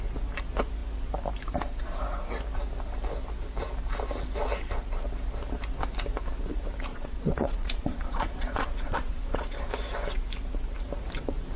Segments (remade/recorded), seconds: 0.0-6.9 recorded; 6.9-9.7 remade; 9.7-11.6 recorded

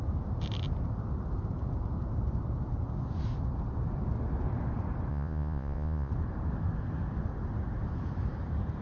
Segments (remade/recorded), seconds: 0.0-5.1 recorded; 5.1-6.1 remade; 6.1-8.8 recorded

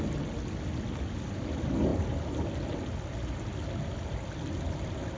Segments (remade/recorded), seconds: 0.0-5.2 recorded

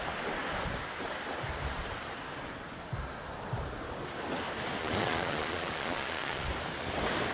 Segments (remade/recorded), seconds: 0.0-4.8 recorded; 4.8-6.5 remade; 6.5-7.3 recorded

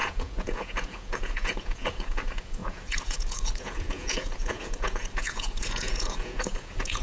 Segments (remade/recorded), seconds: 0.0-7.0 remade

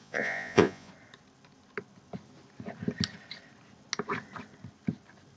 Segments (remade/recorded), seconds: 0.0-0.9 remade; 0.9-5.4 recorded